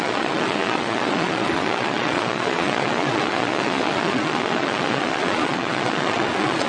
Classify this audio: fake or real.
fake